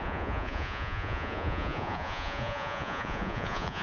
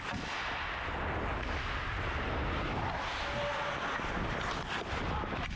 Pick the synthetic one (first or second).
first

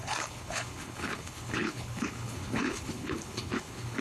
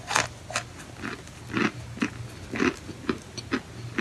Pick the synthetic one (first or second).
first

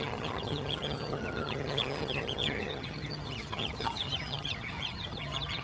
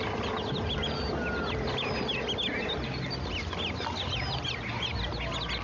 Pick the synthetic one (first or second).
first